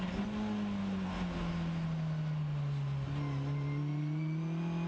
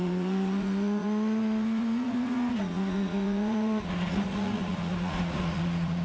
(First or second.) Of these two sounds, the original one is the first